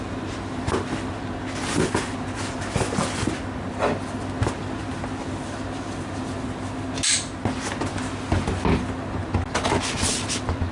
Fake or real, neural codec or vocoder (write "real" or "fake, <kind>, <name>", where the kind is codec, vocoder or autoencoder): real